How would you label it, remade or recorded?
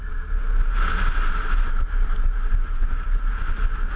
recorded